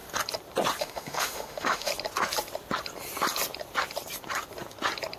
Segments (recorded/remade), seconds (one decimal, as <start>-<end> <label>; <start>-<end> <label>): 0.0-0.8 recorded; 0.8-1.9 remade; 1.9-5.2 recorded